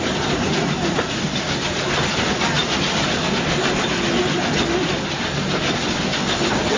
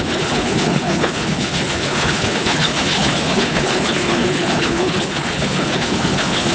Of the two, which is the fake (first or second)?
second